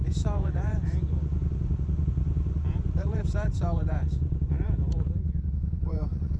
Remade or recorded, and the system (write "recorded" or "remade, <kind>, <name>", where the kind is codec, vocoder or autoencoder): remade, vocoder, Vocos